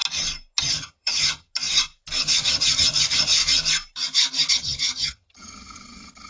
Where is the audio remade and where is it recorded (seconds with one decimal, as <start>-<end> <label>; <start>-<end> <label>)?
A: 0.0-0.6 recorded; 0.6-1.5 remade; 1.5-2.2 recorded; 2.2-3.4 remade; 3.4-4.5 recorded; 4.5-6.3 remade